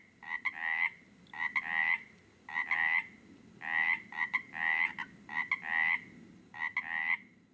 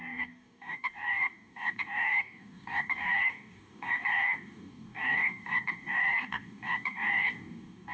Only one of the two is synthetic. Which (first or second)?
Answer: second